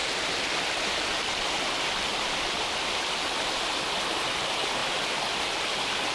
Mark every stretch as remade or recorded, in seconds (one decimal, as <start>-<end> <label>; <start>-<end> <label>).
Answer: 0.0-0.9 remade; 0.9-1.3 recorded; 1.3-2.7 remade; 2.7-6.1 recorded